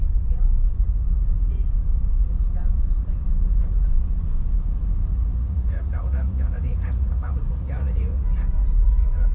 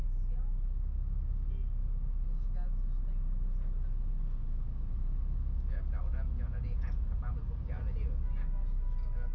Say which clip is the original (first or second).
second